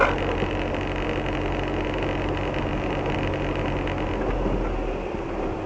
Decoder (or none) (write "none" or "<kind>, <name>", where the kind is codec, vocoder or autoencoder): none